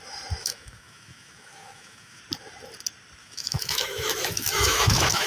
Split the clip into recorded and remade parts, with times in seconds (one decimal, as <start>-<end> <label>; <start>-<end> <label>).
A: 0.0-0.4 recorded; 0.4-2.2 remade; 2.2-3.2 recorded; 3.2-5.3 remade